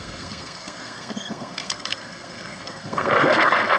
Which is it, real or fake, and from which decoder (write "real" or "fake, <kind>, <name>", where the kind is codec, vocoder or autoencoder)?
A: fake, codec, SNAC